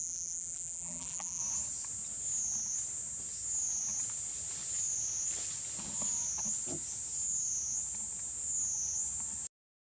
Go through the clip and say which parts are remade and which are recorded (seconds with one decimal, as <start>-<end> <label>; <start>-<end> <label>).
0.0-1.4 remade; 1.4-9.9 recorded